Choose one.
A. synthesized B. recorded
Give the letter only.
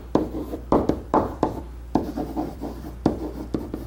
A